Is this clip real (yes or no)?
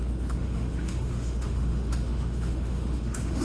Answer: no